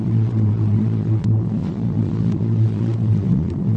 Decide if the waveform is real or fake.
fake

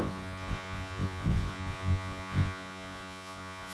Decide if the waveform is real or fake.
fake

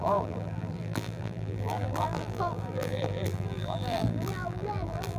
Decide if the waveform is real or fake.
fake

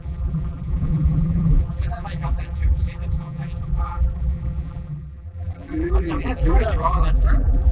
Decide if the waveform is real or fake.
fake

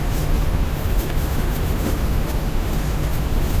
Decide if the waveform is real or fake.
fake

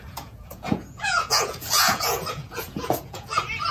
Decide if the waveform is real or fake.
fake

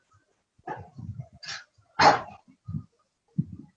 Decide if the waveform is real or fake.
real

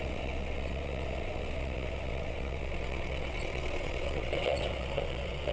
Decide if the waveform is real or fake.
fake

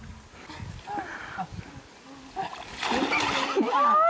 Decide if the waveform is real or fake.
real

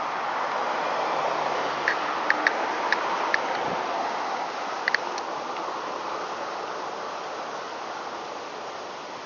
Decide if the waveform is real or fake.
real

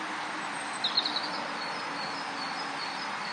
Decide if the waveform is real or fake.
real